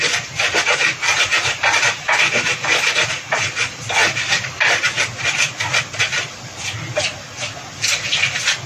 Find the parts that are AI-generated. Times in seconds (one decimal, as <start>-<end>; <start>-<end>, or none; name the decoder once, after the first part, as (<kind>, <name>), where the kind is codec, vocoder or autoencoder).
1.3-3.1 (vocoder, BigVGAN v2); 4.0-4.8